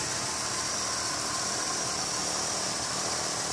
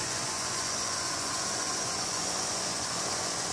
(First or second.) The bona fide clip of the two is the first